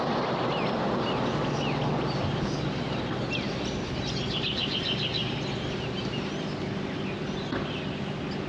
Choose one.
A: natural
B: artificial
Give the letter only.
A